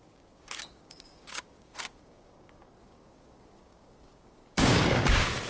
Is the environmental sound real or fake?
fake